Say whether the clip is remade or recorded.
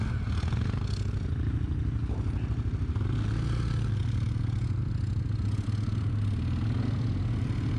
recorded